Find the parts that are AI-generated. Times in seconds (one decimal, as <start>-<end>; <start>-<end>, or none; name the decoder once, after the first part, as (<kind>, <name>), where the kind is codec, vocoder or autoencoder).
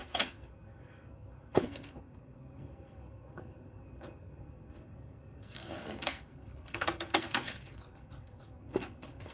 0.0-9.3 (codec, SNAC)